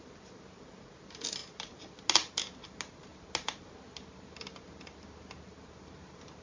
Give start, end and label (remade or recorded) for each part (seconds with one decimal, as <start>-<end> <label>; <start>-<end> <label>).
0.0-6.4 recorded